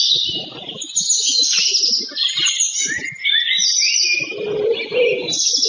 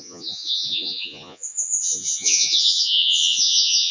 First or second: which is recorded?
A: first